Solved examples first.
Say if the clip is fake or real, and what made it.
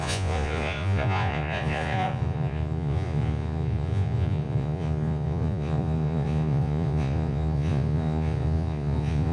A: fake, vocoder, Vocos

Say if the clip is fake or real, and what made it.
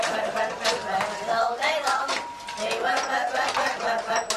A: real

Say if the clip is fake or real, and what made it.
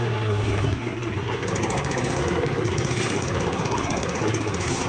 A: fake, codec, SNAC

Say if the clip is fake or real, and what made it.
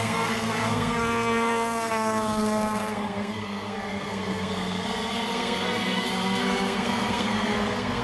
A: fake, codec, SNAC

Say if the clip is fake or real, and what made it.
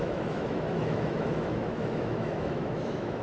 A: fake, autoencoder, DAC-VAE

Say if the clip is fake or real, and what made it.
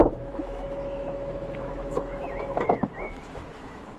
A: fake, autoencoder, DAC-VAE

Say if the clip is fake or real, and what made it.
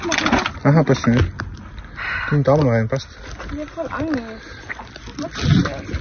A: real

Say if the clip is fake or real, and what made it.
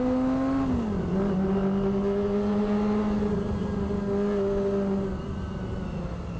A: real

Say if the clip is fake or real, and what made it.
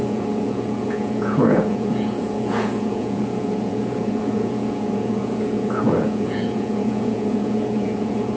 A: fake, vocoder, Vocos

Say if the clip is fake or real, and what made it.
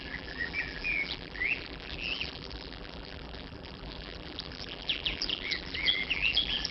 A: fake, vocoder, BigVGAN v2